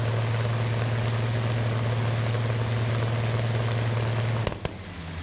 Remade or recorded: recorded